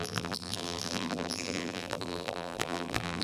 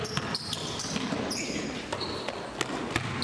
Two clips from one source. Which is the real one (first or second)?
second